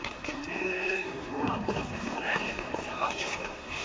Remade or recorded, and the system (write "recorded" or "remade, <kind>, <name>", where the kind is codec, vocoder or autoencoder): remade, codec, SNAC